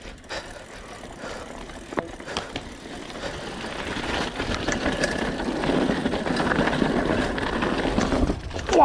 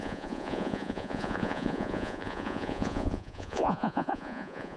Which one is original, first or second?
first